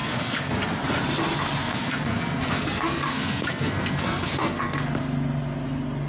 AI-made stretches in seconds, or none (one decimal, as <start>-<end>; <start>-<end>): 0.0-0.5; 1.6-4.8